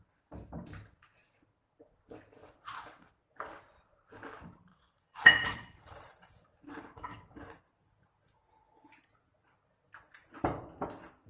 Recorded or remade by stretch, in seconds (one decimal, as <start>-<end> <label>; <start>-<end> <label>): 0.0-2.4 recorded; 2.4-3.1 remade; 3.1-4.7 recorded; 4.7-7.6 remade; 7.6-11.3 recorded